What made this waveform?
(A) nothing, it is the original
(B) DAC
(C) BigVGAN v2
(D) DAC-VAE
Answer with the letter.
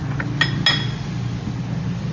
A